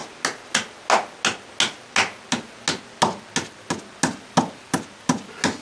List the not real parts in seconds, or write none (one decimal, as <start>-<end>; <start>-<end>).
none